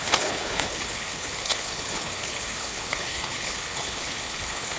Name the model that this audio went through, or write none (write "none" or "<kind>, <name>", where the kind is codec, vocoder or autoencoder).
codec, HILCodec